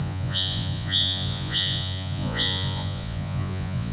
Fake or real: fake